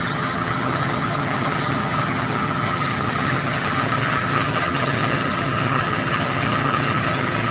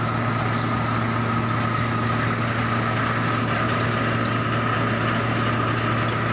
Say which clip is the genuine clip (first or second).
second